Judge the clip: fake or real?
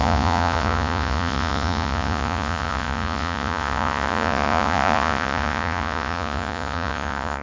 fake